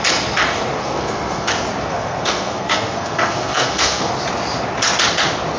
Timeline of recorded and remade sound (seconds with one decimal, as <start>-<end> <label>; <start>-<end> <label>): 0.0-0.8 recorded; 0.8-1.5 remade; 1.5-1.9 recorded; 1.9-4.1 remade; 4.1-5.6 recorded